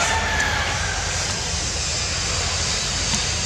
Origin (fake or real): real